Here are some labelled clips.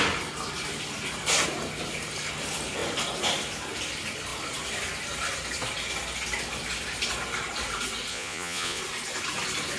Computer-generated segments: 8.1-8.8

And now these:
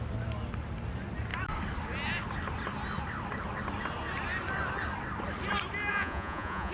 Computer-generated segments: 5.9-6.7